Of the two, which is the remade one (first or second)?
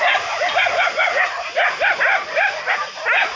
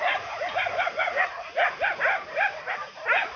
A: second